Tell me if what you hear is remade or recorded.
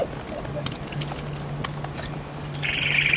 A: recorded